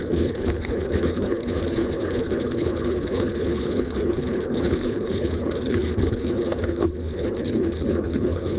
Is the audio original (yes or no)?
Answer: no